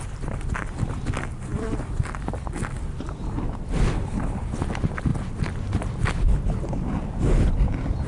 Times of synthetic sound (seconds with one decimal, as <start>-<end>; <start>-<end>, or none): none